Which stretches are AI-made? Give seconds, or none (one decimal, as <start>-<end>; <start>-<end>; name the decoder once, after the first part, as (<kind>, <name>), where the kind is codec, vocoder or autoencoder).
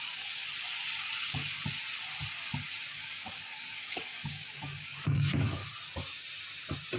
0.0-0.4 (codec, DAC); 2.9-5.6